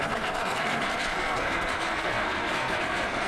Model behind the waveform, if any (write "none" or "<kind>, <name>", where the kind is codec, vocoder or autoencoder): codec, SNAC